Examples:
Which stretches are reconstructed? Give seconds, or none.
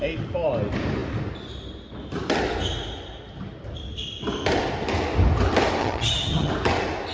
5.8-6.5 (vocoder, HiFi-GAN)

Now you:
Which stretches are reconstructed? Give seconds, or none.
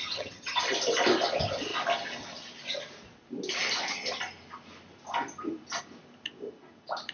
0.0-0.6 (vocoder, HiFi-GAN)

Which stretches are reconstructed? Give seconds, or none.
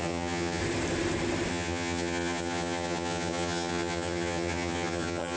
0.0-0.6 (vocoder, HiFi-GAN); 1.5-5.4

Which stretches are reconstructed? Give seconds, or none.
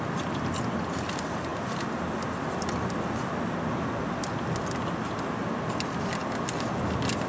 none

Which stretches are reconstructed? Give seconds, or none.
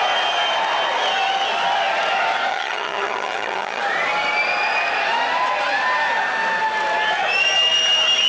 2.5-3.8 (vocoder, HiFi-GAN)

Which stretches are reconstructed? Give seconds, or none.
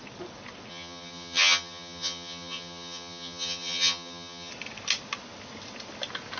0.7-4.5 (vocoder, HiFi-GAN)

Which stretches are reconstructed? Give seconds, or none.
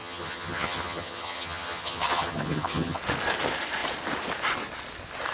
0.0-3.0 (vocoder, HiFi-GAN)